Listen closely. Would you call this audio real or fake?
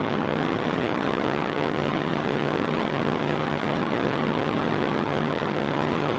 fake